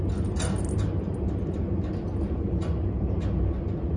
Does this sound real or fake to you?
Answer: real